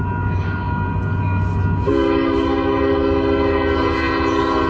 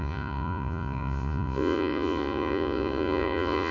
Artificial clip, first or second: second